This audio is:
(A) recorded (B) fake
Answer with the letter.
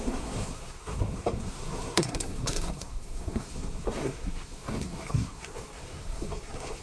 B